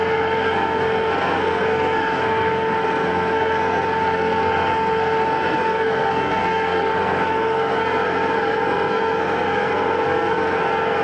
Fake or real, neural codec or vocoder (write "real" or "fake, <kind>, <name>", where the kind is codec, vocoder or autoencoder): fake, codec, SNAC